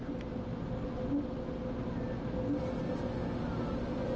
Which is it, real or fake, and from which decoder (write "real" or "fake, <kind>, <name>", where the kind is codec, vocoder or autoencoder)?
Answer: real